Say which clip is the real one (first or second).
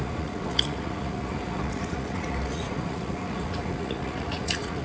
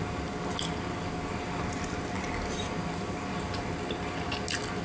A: second